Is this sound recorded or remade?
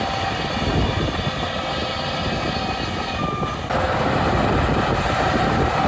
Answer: recorded